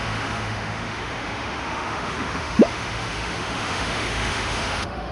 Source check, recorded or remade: remade